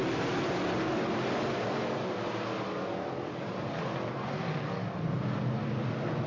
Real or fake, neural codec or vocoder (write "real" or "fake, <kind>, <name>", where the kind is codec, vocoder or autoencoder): real